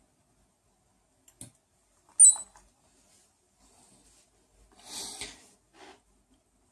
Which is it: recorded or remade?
recorded